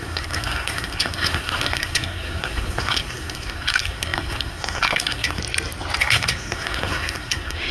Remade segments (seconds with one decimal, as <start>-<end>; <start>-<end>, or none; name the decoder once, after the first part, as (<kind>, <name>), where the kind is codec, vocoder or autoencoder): 0.0-5.4 (codec, SNAC); 6.0-7.7